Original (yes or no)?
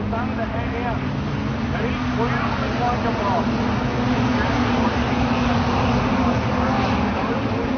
yes